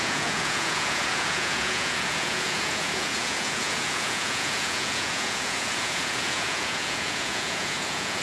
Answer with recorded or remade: remade